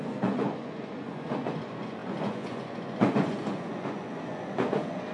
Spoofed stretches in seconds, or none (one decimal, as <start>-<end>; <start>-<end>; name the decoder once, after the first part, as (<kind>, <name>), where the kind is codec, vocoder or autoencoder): 0.0-5.1 (vocoder, Vocos)